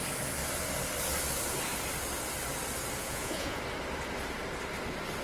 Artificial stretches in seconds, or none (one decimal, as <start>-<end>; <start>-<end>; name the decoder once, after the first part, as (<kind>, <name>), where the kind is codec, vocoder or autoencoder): 3.0-3.6 (vocoder, Vocos)